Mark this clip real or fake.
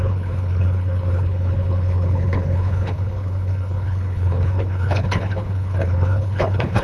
fake